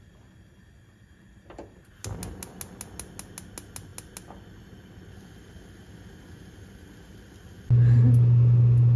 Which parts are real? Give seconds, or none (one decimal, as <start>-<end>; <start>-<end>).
0.0-9.0